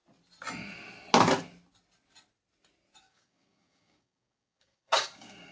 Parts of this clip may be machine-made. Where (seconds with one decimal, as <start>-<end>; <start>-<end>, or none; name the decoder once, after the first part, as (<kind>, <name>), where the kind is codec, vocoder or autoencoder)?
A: 3.0-5.5 (codec, DAC)